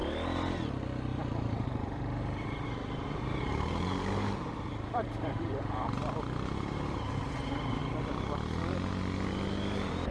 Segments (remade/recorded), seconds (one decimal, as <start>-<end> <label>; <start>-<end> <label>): 0.0-1.1 recorded; 1.1-6.0 remade; 6.0-10.1 recorded